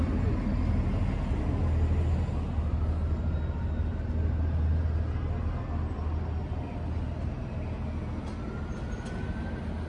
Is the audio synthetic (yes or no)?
no